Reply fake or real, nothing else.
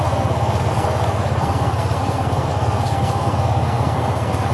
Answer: fake